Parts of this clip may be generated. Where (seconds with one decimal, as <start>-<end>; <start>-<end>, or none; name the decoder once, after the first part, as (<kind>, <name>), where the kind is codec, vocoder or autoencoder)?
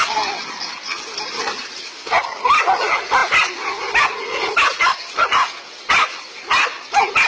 none